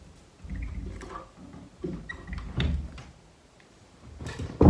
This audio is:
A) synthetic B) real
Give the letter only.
B